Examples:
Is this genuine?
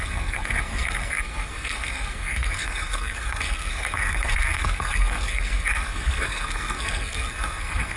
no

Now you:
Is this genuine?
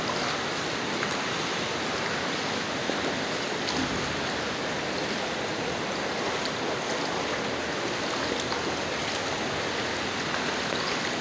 yes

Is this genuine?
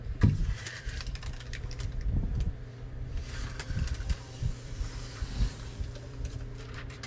no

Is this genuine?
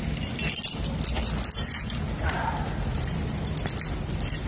yes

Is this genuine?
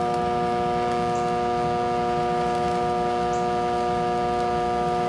yes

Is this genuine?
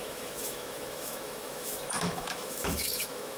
no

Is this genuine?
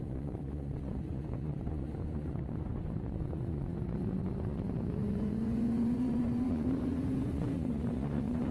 no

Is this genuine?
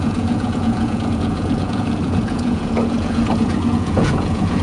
no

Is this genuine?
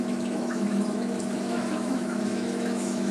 no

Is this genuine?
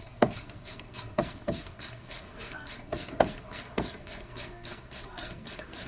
no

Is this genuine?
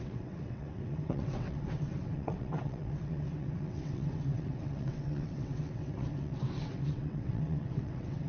no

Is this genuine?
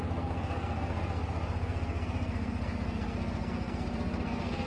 no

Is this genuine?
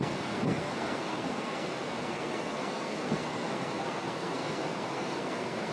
no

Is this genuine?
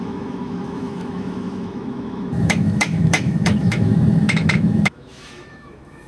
no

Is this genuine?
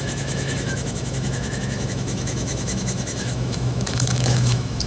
no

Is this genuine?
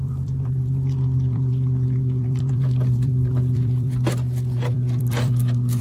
no